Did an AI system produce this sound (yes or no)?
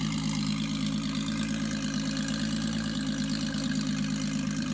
no